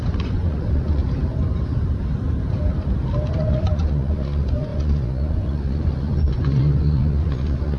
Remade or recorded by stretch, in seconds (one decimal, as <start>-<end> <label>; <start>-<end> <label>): 0.0-1.0 remade; 1.0-3.3 recorded; 3.3-7.8 remade